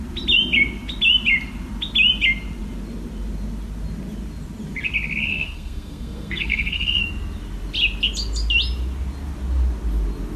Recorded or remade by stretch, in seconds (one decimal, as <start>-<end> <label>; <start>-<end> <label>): 0.0-5.3 recorded; 5.3-7.0 remade; 7.0-10.4 recorded